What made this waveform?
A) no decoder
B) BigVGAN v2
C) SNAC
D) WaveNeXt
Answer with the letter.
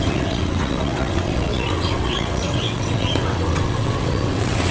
D